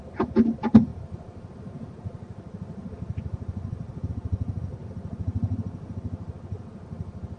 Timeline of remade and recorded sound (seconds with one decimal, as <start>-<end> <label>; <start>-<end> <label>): 0.0-7.4 recorded